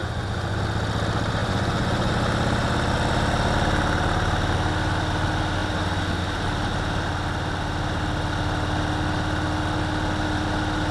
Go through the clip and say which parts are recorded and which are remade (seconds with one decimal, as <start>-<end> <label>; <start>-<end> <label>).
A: 0.0-0.6 remade; 0.6-1.4 recorded; 1.4-2.1 remade; 2.1-10.9 recorded